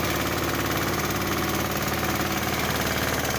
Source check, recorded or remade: recorded